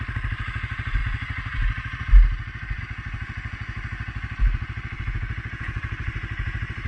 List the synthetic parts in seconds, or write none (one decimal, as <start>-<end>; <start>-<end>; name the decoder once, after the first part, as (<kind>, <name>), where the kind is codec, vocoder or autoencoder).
none